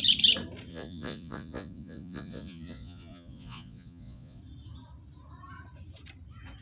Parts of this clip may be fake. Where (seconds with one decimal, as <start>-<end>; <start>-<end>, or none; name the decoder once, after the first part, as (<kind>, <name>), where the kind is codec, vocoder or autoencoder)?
0.7-4.4 (vocoder, Vocos)